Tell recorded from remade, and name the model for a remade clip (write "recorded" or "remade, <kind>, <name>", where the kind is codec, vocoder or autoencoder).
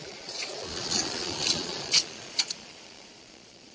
remade, vocoder, Vocos